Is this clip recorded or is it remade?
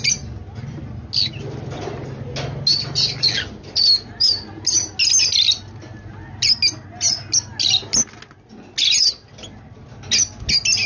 recorded